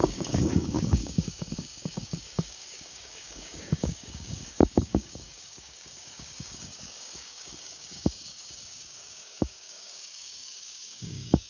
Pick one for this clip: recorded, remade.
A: remade